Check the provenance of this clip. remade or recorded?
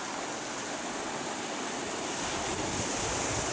recorded